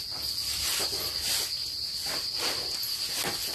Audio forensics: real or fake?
real